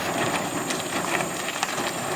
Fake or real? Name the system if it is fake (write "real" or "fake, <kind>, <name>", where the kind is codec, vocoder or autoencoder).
real